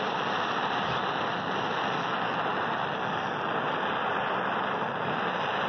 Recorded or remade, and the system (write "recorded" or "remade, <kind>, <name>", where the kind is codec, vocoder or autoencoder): recorded